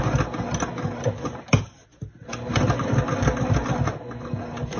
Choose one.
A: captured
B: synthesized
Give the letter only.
A